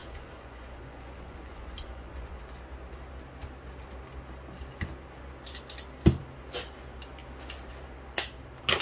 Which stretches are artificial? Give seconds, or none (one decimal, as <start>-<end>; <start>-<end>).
0.0-2.4